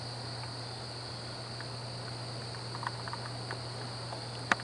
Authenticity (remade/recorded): recorded